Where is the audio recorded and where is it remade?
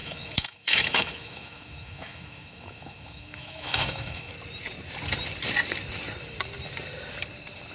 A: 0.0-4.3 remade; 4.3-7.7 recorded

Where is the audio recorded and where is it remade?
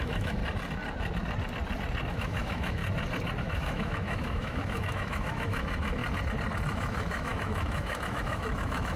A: 0.0-0.4 remade; 0.4-2.1 recorded; 2.1-2.8 remade; 2.8-3.4 recorded; 3.4-6.0 remade; 6.0-6.7 recorded; 6.7-9.0 remade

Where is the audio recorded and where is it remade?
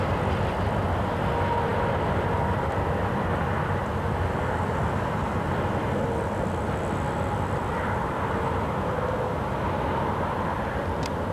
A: 0.0-11.3 recorded